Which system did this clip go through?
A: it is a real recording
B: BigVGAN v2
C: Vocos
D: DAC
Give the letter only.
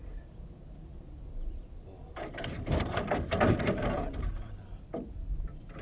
A